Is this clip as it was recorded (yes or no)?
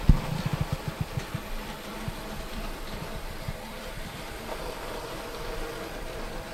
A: no